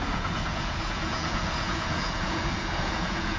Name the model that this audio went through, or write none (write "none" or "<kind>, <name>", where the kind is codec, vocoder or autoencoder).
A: vocoder, Vocos